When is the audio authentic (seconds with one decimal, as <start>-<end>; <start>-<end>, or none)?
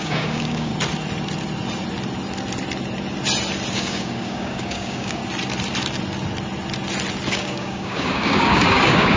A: 0.7-3.7; 5.2-7.3